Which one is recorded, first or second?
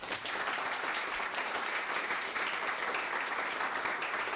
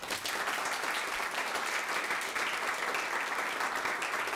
second